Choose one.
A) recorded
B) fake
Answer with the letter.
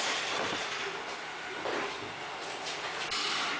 A